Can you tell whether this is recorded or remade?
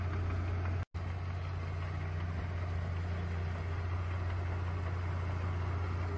recorded